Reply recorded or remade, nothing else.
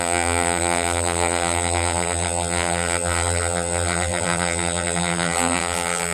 remade